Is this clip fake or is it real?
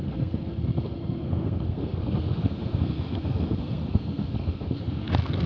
fake